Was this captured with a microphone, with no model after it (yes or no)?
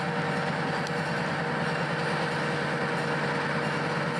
yes